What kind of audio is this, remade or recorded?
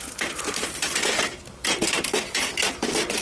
recorded